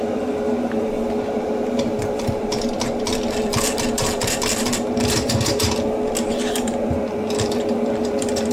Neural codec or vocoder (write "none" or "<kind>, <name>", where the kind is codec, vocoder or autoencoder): vocoder, BigVGAN v2